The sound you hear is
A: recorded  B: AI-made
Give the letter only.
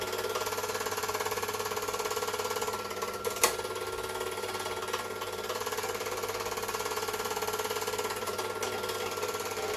A